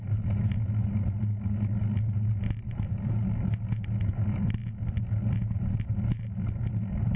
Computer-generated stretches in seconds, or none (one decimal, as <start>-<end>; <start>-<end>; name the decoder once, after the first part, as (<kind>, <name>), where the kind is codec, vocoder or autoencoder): none